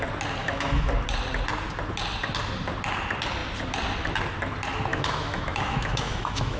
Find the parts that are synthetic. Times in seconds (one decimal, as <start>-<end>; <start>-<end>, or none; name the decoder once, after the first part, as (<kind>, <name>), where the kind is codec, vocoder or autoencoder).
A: 0.4-0.9 (autoencoder, DAC-VAE); 4.9-6.6